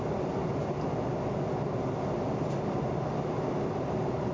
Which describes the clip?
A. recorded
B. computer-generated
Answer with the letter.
A